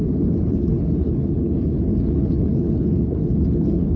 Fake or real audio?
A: fake